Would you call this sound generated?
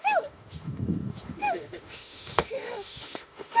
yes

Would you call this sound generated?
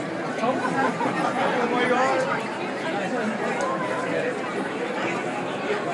no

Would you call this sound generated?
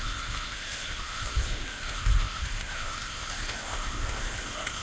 yes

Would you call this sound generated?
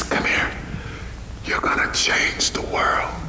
no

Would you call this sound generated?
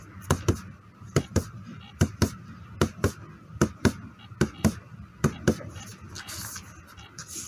no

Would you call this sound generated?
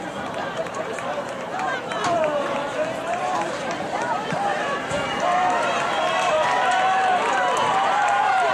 yes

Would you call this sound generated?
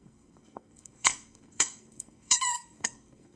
yes